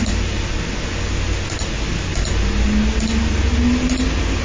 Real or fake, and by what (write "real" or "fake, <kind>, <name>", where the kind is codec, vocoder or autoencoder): real